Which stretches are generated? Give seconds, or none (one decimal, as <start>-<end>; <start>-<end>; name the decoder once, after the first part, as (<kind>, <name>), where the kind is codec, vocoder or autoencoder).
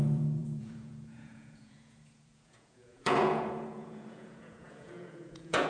0.0-5.7 (vocoder, Vocos)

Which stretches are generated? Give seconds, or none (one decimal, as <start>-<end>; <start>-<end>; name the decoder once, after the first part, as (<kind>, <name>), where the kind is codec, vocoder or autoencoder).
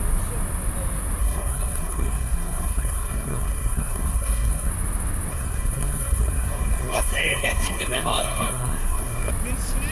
1.2-4.7 (codec, SNAC); 5.3-9.3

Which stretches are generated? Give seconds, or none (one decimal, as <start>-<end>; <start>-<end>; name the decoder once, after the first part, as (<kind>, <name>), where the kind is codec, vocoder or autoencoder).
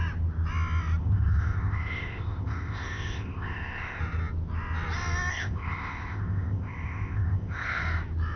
1.0-4.0 (codec, ZipCodec); 5.3-7.8